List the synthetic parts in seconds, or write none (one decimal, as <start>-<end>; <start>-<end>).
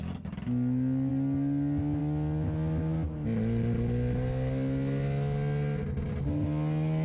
none